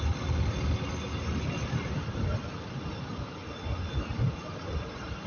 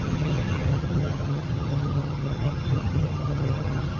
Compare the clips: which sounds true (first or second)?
first